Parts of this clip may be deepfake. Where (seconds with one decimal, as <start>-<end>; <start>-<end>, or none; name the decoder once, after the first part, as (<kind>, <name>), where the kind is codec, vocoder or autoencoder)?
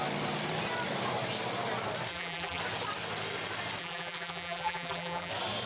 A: 2.1-2.6 (vocoder, BigVGAN v2); 3.8-5.3